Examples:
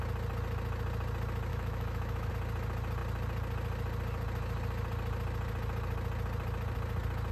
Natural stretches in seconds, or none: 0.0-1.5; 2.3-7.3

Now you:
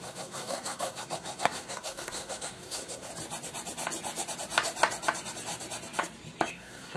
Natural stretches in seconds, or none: 3.1-6.5

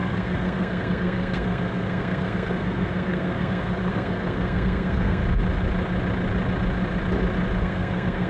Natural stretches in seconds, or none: 5.2-7.6